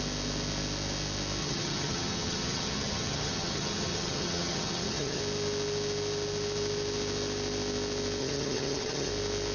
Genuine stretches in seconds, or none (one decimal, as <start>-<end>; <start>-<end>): 0.0-1.4; 5.2-8.2; 9.1-9.5